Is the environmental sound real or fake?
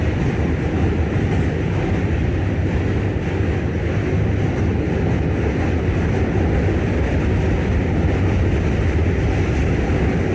real